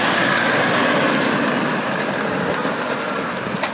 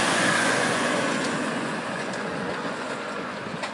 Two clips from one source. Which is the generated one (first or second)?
second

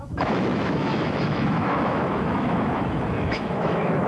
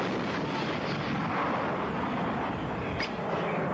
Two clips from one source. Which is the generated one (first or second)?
first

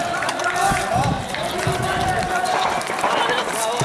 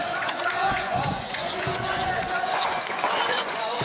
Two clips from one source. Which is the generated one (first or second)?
second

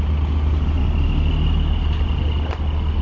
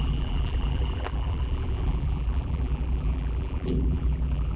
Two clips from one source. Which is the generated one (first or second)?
second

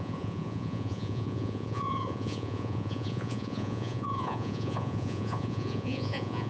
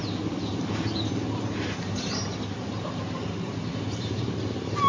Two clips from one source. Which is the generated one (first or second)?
first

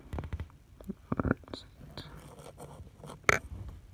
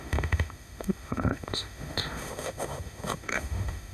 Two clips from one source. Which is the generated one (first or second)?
second